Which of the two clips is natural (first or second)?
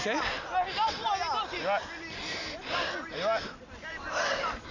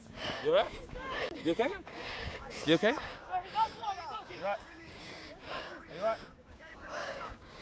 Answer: first